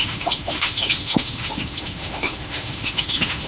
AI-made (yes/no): yes